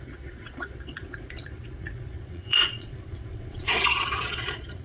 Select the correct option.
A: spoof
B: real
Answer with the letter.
A